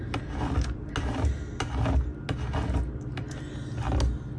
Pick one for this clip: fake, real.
real